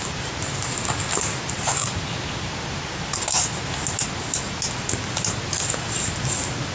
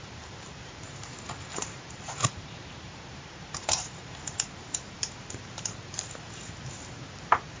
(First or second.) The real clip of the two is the first